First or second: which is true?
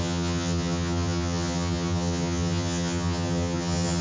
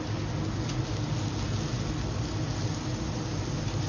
second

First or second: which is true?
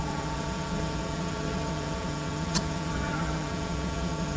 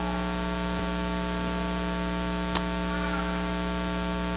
second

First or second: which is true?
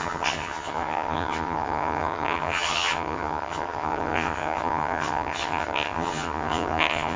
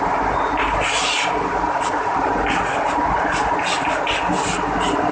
second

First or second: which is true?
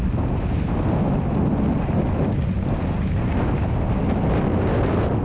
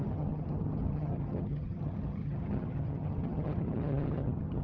first